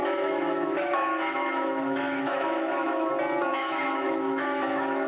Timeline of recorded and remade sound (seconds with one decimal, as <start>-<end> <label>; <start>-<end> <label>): 0.0-3.1 remade; 3.1-3.5 recorded; 3.5-5.1 remade